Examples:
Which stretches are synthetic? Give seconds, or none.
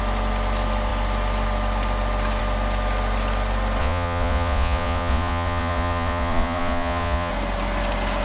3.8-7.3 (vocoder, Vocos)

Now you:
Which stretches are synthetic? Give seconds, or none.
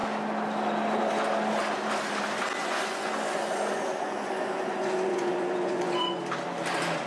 2.6-6.2 (vocoder, Vocos)